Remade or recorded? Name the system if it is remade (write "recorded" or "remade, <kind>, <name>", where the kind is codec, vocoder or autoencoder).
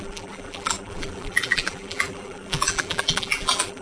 remade, vocoder, BigVGAN v2